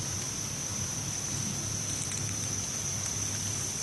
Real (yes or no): yes